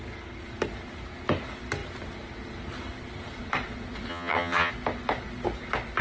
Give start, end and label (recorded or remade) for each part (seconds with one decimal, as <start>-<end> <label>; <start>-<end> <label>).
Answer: 0.0-4.1 recorded; 4.1-4.7 remade; 4.7-6.0 recorded